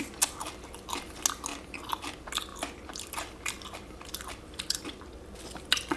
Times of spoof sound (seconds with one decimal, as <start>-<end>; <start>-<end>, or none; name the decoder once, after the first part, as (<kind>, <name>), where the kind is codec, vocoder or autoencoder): 2.5-5.1 (vocoder, BigVGAN v2)